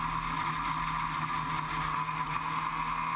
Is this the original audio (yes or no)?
yes